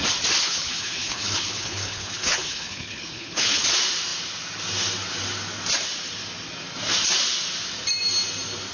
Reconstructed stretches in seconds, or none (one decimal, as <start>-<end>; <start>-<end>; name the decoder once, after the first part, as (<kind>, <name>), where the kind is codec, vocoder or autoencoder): 0.4-3.6 (codec, HILCodec)